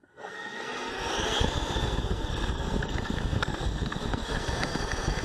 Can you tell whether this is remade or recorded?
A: remade